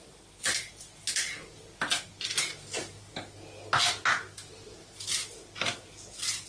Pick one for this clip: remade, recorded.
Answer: recorded